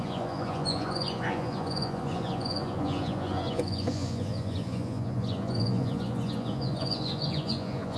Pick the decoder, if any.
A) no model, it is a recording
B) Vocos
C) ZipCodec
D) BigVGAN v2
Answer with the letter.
B